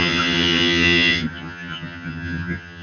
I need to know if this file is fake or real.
fake